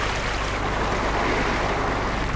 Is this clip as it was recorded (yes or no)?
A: yes